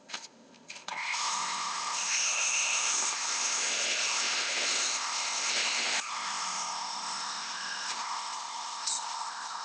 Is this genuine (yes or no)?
no